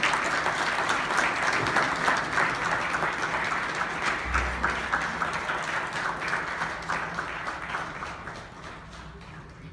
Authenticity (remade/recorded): recorded